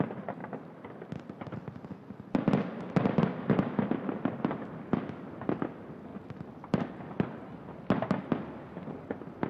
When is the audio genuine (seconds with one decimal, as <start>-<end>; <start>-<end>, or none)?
0.0-0.4; 1.1-6.1; 6.9-9.5